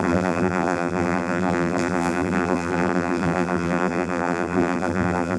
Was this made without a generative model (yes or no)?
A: no